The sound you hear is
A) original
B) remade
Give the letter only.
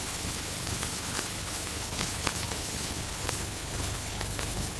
B